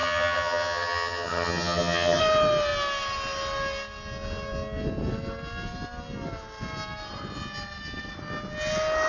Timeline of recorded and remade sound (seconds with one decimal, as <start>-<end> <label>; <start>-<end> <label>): 0.0-2.2 remade; 2.2-9.1 recorded